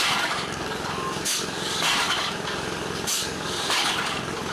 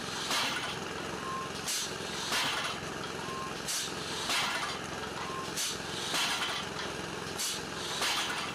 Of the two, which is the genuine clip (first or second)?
second